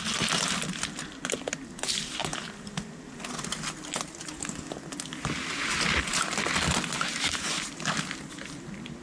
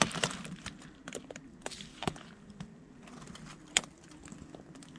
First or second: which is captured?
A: first